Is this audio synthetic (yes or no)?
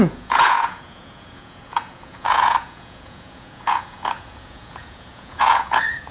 yes